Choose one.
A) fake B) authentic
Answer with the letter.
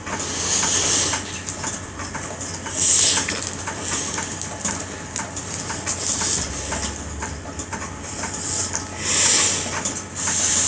B